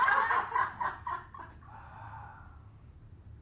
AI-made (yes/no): no